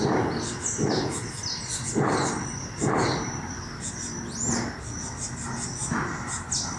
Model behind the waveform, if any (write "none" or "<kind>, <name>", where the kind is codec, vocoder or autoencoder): none